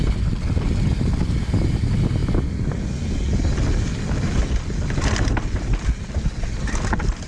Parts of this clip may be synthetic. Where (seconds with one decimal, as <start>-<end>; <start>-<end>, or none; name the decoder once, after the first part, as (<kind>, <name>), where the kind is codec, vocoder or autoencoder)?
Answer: none

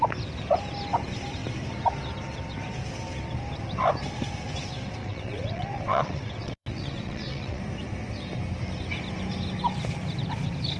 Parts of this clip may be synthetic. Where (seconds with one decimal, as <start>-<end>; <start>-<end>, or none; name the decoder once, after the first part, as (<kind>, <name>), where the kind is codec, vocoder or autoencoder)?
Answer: 5.0-7.6 (vocoder, WaveNeXt)